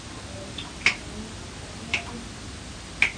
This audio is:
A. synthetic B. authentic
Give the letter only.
B